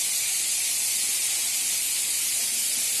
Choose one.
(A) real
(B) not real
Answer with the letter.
A